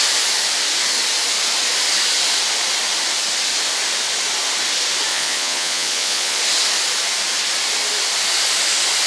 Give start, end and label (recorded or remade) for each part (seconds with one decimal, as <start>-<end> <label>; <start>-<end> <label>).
0.0-5.1 recorded; 5.1-6.4 remade; 6.4-9.1 recorded